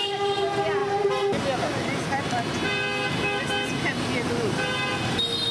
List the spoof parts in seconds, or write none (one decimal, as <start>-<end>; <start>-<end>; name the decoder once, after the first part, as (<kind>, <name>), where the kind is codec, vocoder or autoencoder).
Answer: none